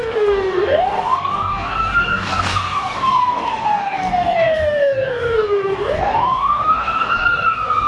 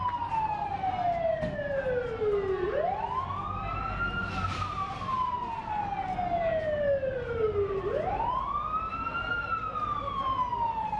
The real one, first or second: second